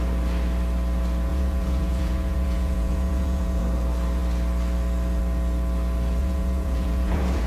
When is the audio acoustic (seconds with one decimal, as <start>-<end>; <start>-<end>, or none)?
0.0-1.3; 3.6-6.2